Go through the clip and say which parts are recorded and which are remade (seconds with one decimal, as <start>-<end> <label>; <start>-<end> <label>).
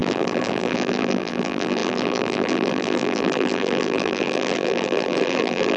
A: 0.0-5.8 remade